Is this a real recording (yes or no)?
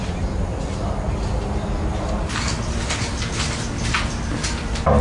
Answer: yes